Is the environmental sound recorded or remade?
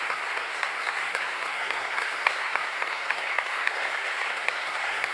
remade